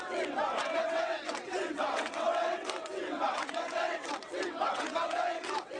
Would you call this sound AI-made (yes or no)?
yes